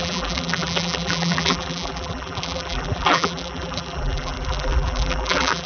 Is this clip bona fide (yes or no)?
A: no